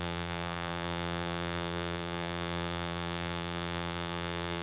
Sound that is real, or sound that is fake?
fake